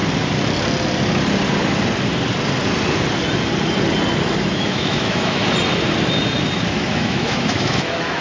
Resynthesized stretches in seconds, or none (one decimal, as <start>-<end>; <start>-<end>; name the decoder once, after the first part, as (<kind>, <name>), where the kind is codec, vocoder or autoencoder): 4.4-5.4 (autoencoder, DAC-VAE); 6.7-8.2